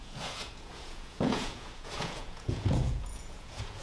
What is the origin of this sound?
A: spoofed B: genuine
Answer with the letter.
A